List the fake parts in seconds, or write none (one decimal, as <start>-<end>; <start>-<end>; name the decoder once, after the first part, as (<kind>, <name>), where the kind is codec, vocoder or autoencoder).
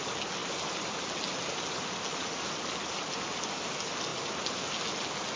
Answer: none